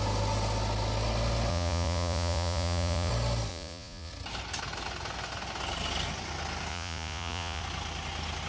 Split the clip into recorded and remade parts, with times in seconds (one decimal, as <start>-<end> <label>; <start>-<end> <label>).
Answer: 0.0-1.5 recorded; 1.5-3.1 remade; 3.1-3.5 recorded; 3.5-4.1 remade; 4.1-6.7 recorded; 6.7-7.6 remade; 7.6-8.5 recorded